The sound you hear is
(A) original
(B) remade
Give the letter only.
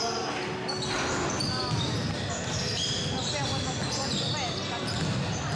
A